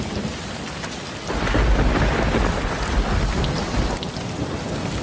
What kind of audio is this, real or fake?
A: real